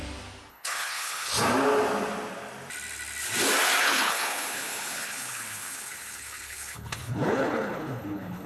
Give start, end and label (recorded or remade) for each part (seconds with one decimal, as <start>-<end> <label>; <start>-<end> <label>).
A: 0.0-0.5 recorded; 0.5-1.3 remade; 1.3-3.8 recorded; 3.8-8.5 remade